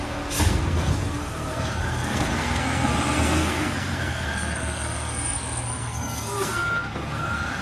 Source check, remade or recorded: remade